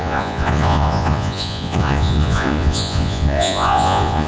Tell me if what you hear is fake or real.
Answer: fake